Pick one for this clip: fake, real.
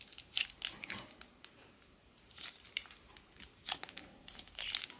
fake